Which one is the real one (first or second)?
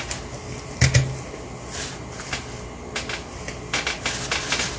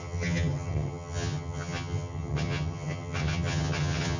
first